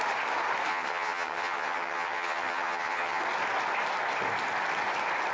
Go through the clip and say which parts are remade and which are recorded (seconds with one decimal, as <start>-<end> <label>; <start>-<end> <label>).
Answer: 0.0-0.7 recorded; 0.7-3.2 remade; 3.2-5.3 recorded